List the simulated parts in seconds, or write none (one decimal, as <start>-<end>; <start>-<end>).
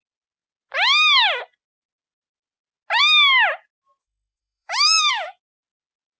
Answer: 4.0-5.1